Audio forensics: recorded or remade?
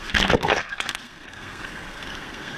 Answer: remade